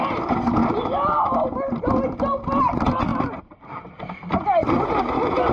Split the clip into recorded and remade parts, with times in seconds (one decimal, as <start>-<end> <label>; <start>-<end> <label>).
0.0-3.1 recorded; 3.1-5.0 remade; 5.0-5.5 recorded